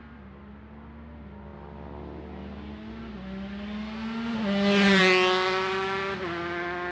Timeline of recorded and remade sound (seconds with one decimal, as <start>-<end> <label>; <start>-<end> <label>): 0.0-6.9 recorded